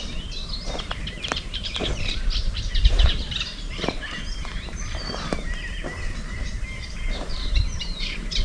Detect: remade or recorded remade